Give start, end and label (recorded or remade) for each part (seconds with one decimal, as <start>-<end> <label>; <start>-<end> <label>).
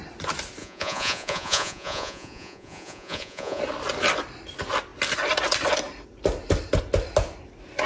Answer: 0.0-0.6 recorded; 0.6-3.6 remade; 3.6-7.9 recorded